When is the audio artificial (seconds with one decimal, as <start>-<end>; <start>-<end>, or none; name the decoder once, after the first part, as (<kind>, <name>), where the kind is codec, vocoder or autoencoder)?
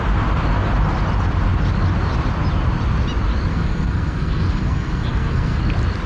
3.5-5.6 (codec, SNAC)